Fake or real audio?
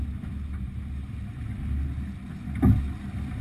real